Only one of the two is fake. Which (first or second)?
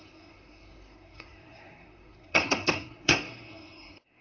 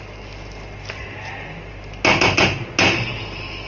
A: first